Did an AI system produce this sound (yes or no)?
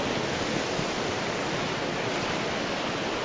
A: no